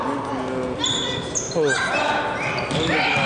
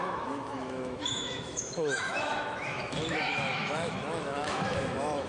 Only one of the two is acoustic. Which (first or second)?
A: first